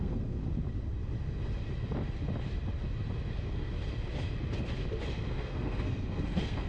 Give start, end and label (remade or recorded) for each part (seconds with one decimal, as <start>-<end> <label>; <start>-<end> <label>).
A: 0.0-0.4 remade; 0.4-3.3 recorded; 3.3-3.7 remade; 3.7-5.1 recorded; 5.1-6.7 remade